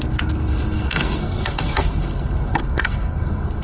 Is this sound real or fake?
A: fake